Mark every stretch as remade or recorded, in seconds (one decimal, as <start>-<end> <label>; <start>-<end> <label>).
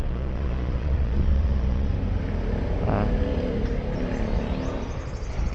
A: 0.0-1.9 remade; 1.9-5.5 recorded